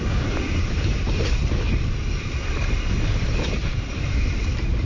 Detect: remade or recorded recorded